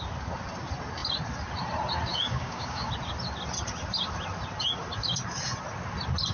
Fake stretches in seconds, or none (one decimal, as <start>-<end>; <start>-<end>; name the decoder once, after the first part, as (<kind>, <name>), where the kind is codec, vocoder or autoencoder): 2.1-2.9 (codec, DAC)